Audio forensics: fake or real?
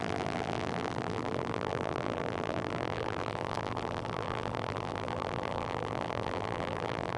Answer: fake